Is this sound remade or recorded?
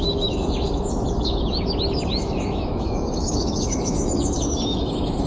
remade